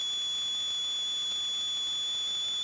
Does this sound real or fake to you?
real